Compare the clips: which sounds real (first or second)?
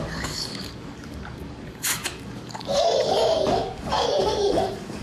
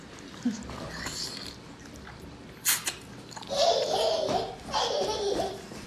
second